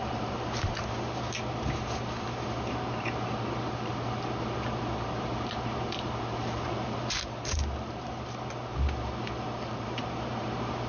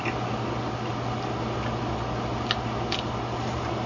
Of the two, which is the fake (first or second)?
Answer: first